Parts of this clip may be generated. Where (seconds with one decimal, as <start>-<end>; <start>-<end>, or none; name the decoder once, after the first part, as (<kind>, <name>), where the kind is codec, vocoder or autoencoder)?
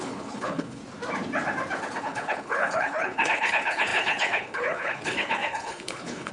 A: 0.0-0.8 (codec, HILCodec); 2.0-6.3